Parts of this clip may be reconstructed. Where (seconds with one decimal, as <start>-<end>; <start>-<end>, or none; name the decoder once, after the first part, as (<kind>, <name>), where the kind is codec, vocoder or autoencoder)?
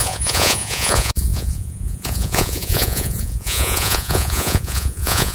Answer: 0.0-5.3 (vocoder, Vocos)